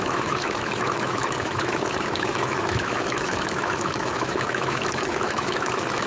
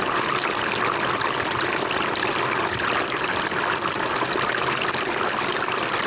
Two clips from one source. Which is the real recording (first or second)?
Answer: second